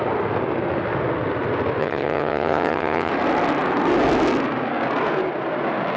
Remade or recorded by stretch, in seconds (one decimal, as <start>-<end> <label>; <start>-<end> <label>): 0.0-1.8 recorded; 1.8-3.1 remade; 3.1-6.0 recorded